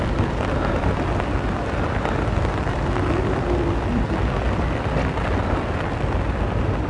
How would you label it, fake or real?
real